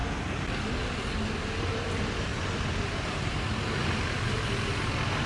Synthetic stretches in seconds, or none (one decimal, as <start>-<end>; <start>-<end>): 1.6-2.3; 2.8-3.8